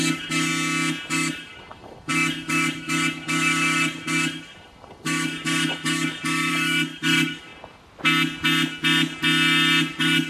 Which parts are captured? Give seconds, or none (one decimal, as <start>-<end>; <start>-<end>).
0.5-1.1; 7.5-9.9